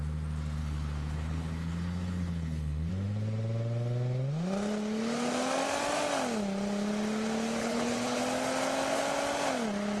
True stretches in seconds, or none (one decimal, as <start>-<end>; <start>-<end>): 0.0-0.6; 2.9-7.6; 8.2-10.0

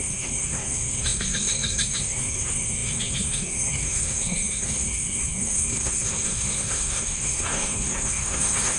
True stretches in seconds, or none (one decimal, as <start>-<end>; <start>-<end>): none

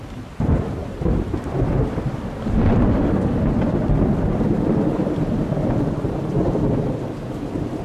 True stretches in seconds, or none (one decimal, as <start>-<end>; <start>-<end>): 6.6-7.8

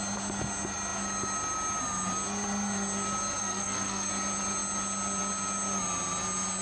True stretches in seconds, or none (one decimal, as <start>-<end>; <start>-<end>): 0.0-3.4; 4.1-6.6

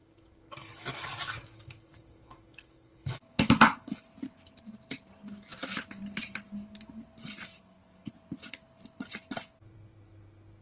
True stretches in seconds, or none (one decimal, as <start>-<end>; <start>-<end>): 4.0-7.5; 8.1-10.6

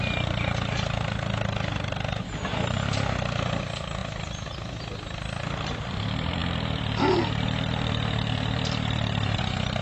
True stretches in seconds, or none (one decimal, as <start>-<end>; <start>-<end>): 0.0-6.4; 9.4-9.8